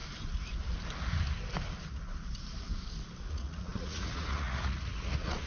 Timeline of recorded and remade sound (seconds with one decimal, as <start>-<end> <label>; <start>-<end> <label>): 0.0-3.3 recorded; 3.3-5.5 remade